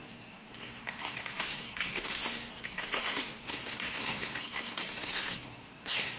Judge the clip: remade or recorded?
remade